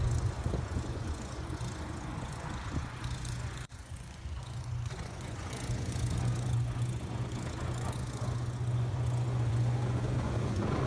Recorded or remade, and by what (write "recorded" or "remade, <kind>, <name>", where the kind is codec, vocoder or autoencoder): remade, vocoder, Vocos